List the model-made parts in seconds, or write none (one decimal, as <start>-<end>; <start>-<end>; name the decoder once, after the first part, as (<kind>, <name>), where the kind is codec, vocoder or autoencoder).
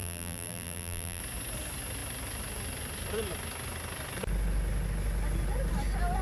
0.0-1.2 (vocoder, BigVGAN v2)